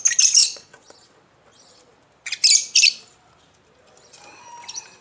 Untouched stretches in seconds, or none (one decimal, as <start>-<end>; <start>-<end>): 0.0-0.4; 1.1-5.0